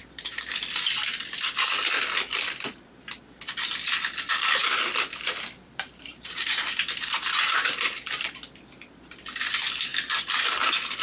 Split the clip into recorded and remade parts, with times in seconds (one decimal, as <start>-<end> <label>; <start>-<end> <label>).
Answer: 0.0-0.6 remade; 0.6-4.6 recorded; 4.6-8.3 remade; 8.3-11.0 recorded